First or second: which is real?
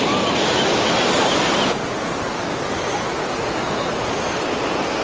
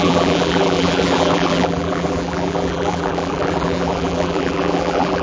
first